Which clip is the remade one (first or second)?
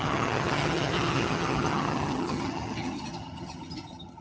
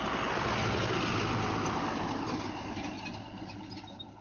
first